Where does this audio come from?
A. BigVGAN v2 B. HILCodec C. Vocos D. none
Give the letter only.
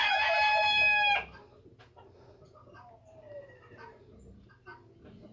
D